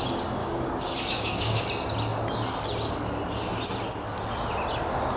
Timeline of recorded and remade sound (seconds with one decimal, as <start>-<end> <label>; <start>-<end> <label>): 0.0-0.4 recorded; 0.4-1.6 remade; 1.6-5.2 recorded